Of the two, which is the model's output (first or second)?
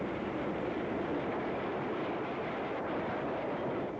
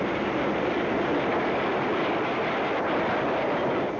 first